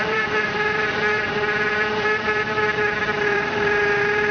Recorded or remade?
remade